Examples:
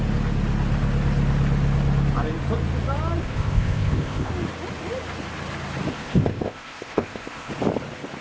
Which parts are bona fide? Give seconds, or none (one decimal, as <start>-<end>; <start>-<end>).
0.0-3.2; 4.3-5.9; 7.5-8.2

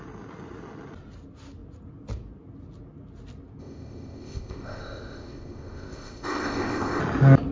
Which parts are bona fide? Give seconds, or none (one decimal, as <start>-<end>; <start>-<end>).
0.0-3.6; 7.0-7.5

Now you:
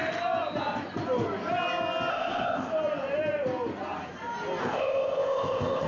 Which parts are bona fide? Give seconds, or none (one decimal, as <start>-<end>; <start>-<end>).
0.0-2.1; 2.7-4.6

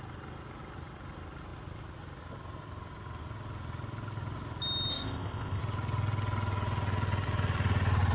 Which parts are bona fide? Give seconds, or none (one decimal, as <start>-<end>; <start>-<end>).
0.0-4.9; 5.6-8.1